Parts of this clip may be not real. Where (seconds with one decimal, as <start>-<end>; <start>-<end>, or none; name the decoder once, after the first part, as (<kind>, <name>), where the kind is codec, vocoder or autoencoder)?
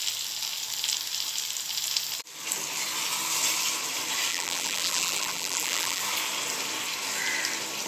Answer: 4.3-6.0 (vocoder, BigVGAN v2)